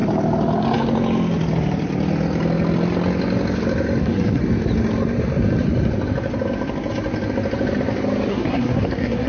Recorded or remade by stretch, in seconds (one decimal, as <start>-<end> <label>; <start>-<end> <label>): 0.0-4.0 recorded; 4.0-4.4 remade; 4.4-8.3 recorded; 8.3-9.3 remade